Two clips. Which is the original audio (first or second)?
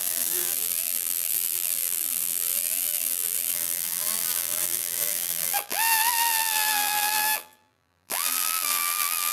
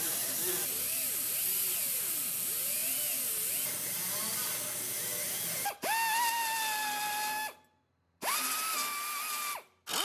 second